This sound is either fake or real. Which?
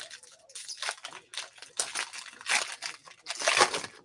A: real